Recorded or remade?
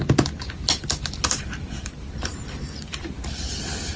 remade